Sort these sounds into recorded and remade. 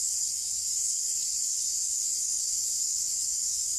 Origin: remade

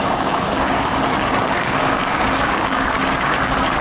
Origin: remade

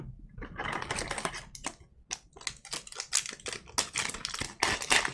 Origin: recorded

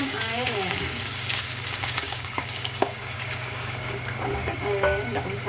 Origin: remade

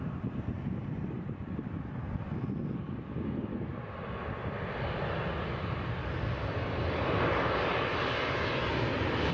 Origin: recorded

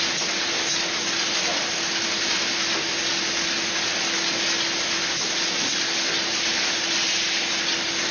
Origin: recorded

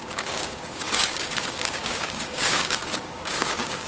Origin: remade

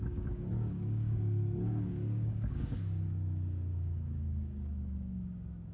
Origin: remade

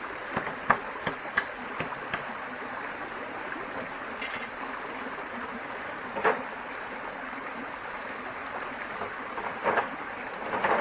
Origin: recorded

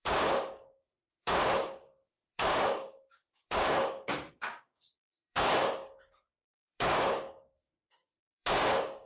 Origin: remade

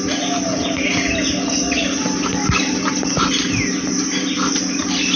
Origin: recorded